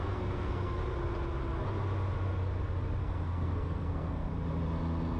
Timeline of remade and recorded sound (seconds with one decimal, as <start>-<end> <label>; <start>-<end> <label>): 0.0-0.8 remade; 0.8-3.0 recorded; 3.0-4.3 remade; 4.3-5.2 recorded